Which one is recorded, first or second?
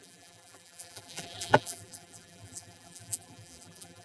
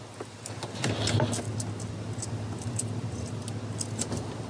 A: second